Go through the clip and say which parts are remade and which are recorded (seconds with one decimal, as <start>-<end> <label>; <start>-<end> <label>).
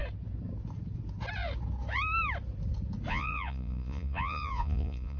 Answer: 0.0-3.1 recorded; 3.1-5.2 remade